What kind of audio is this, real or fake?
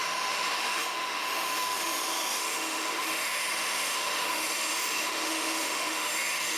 fake